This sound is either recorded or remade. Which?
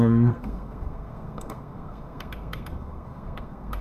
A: remade